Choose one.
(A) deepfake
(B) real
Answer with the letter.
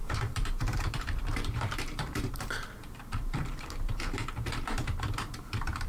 A